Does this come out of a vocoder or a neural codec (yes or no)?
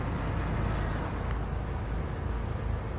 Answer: no